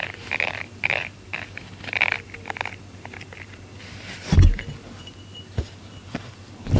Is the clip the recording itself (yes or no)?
yes